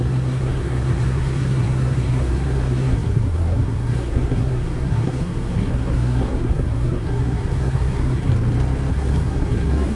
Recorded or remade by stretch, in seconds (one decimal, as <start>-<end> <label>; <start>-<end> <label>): 0.0-8.3 remade; 8.3-8.9 recorded; 8.9-10.0 remade